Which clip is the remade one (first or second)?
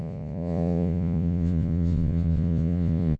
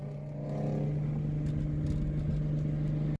first